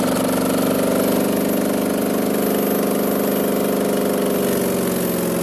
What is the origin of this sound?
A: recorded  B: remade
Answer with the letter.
A